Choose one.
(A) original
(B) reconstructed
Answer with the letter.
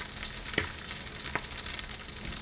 A